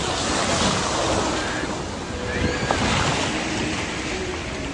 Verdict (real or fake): real